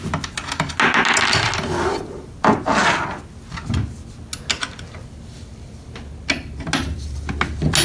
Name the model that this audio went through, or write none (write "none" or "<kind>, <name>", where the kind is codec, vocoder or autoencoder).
none